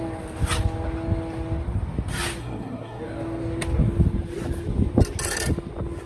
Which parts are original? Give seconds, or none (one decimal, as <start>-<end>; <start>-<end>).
0.0-2.4; 3.0-6.1